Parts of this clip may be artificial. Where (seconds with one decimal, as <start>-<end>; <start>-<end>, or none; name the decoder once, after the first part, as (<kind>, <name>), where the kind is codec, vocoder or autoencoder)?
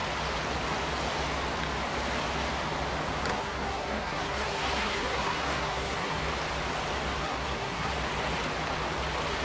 3.3-6.2 (codec, SNAC); 7.2-7.9